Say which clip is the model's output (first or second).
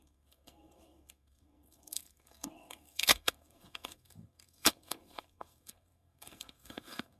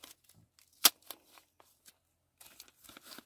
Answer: first